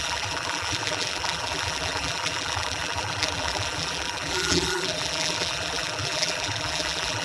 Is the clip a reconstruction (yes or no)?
yes